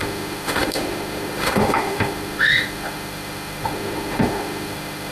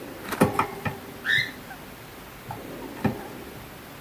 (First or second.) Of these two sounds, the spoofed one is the first